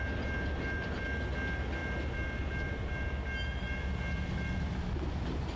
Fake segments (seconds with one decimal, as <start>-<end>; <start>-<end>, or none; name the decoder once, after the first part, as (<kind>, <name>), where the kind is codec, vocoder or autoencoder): none